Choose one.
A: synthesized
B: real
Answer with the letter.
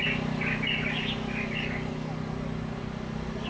B